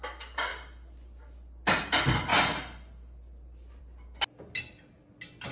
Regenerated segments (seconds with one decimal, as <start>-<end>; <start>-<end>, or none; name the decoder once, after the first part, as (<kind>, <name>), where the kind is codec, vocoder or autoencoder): none